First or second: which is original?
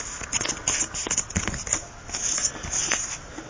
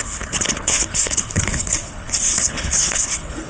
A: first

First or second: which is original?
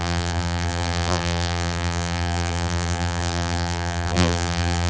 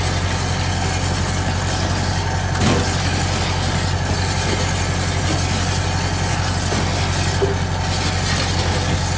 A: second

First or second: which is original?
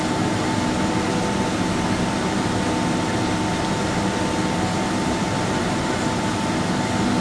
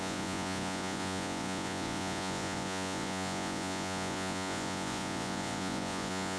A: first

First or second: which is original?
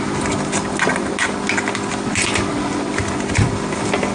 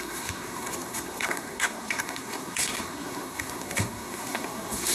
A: first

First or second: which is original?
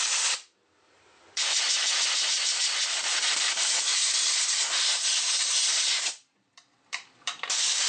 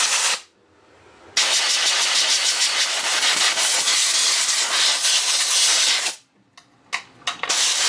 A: second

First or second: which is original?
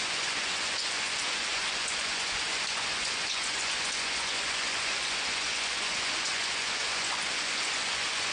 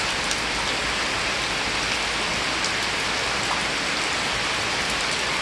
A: second